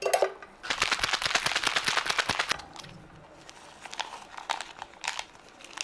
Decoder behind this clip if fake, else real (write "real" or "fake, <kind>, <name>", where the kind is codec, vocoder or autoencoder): real